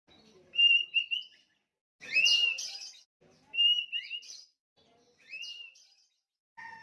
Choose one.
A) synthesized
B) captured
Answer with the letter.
B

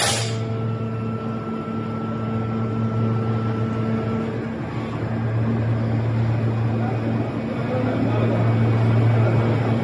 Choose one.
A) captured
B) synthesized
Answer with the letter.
A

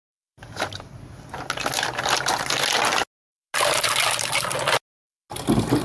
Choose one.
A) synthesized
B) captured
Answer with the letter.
B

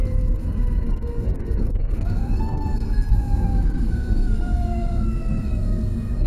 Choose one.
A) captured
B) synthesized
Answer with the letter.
B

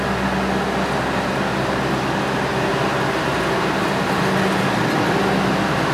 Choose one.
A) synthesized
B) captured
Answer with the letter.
B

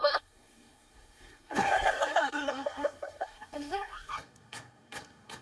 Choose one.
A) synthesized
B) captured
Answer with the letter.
A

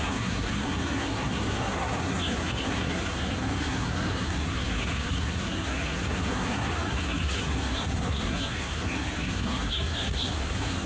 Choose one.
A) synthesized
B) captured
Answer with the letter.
A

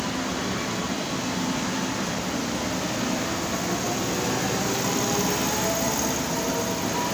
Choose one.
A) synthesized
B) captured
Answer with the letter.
B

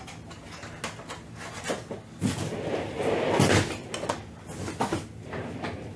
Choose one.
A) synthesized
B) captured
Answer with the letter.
B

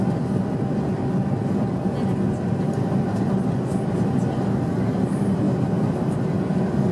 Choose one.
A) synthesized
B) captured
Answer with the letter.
B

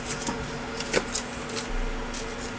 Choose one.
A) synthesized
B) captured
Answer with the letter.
B